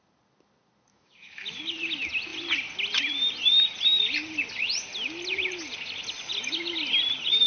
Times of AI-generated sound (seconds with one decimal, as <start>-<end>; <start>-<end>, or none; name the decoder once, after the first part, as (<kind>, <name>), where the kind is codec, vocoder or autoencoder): 0.9-1.6 (autoencoder, DAC-VAE)